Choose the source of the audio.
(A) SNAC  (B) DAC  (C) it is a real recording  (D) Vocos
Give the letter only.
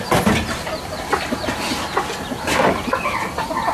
C